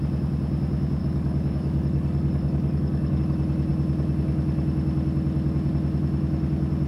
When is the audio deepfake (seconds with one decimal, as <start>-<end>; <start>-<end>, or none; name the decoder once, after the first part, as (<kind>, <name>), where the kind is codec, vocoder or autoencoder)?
1.0-3.2 (codec, DAC)